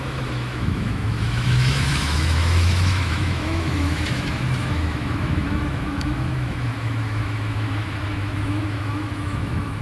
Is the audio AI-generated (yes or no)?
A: yes